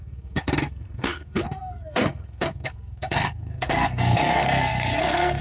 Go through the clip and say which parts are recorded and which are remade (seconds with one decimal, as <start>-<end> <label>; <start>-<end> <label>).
0.0-5.4 remade